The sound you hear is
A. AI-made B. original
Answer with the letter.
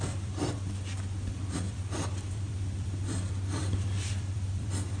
A